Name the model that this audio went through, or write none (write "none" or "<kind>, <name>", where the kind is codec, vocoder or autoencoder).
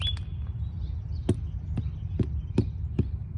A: none